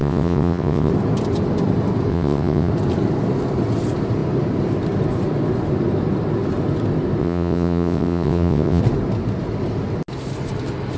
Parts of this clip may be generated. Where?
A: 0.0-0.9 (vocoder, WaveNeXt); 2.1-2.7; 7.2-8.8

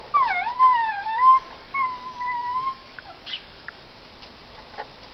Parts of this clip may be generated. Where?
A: 0.9-4.0 (codec, DAC)